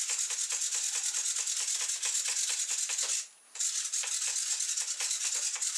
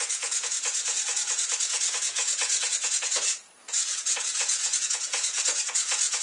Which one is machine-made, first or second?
second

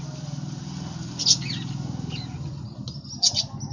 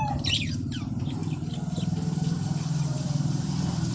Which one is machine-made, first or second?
second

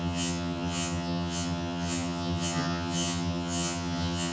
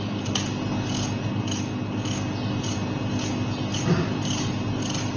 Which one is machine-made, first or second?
first